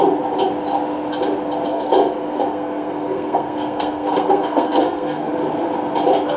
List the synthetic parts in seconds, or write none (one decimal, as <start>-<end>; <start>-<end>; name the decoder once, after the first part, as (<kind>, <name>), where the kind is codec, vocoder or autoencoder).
1.7-5.3 (codec, SNAC)